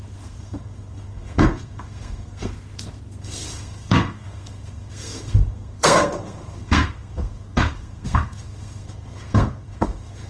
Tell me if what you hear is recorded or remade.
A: remade